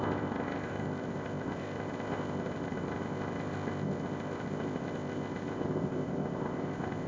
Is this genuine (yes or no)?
no